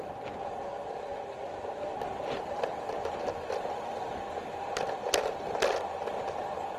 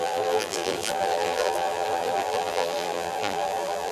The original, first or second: first